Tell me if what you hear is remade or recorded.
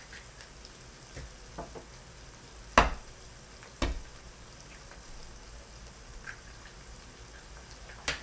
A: recorded